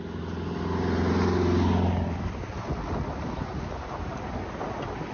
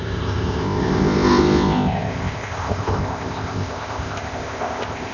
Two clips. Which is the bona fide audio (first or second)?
first